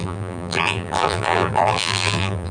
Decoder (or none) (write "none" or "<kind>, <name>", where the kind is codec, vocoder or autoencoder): vocoder, BigVGAN v2